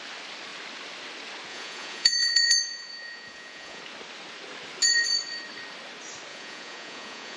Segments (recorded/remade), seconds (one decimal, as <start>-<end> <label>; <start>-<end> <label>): 0.0-1.5 recorded; 1.5-3.8 remade; 3.8-6.3 recorded; 6.3-7.4 remade